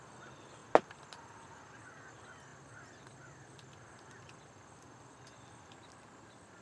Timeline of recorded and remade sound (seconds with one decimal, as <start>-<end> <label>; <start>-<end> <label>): 0.0-6.6 recorded

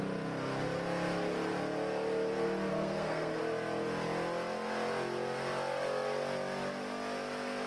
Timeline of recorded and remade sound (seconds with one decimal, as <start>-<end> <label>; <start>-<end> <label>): 0.0-2.7 recorded; 2.7-3.4 remade; 3.4-7.7 recorded

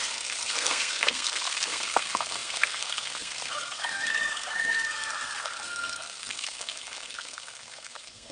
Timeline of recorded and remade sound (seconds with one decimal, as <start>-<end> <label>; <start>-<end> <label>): 0.0-8.3 remade